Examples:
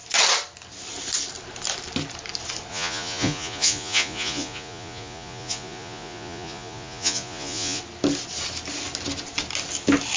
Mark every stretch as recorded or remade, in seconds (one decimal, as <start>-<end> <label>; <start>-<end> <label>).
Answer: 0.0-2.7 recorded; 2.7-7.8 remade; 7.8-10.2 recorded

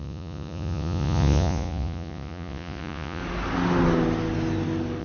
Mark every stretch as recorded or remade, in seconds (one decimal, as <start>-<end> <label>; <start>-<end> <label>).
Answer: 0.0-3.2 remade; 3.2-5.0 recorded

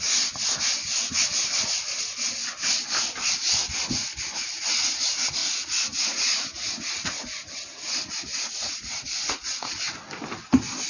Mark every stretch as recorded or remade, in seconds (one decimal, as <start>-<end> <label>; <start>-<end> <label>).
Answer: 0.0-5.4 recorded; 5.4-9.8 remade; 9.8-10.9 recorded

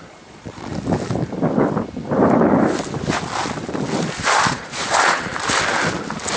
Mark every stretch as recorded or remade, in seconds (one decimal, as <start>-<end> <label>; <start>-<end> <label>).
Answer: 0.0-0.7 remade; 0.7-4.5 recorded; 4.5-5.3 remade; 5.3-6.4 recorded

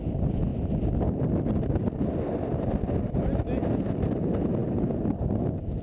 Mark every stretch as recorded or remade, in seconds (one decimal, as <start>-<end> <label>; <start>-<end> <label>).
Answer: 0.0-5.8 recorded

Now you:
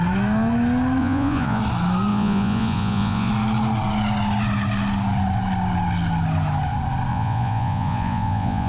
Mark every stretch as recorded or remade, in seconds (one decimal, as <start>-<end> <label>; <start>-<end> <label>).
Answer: 0.0-1.0 recorded; 1.0-1.6 remade; 1.6-2.1 recorded; 2.1-3.3 remade; 3.3-7.1 recorded; 7.1-8.7 remade